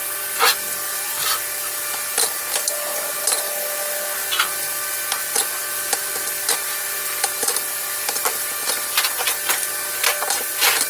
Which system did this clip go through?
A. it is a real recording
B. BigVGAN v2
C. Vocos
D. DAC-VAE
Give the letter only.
A